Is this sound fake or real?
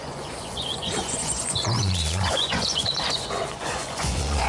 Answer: fake